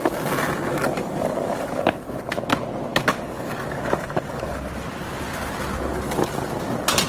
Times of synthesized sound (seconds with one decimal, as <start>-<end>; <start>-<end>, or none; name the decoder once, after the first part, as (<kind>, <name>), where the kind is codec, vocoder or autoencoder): 0.7-1.8 (codec, DAC); 2.9-4.5